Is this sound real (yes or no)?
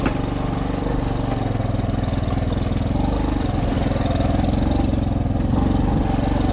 yes